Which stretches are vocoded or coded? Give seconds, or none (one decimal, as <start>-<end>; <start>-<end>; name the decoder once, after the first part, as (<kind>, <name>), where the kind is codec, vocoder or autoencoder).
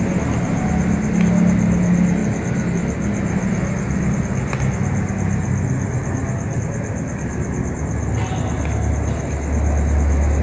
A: none